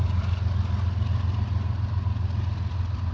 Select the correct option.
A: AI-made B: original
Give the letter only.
B